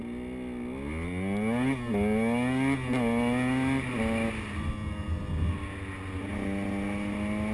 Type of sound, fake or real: real